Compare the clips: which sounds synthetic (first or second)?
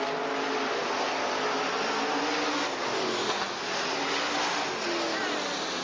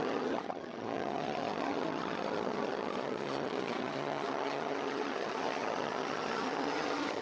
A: second